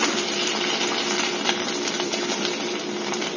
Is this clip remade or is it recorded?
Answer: recorded